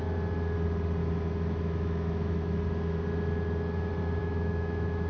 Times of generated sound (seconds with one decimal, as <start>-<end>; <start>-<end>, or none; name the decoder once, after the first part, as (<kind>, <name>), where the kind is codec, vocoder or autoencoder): 1.0-2.6 (autoencoder, DAC-VAE); 4.2-5.1